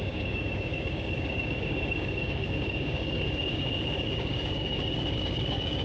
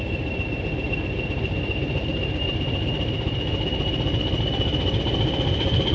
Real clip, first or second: second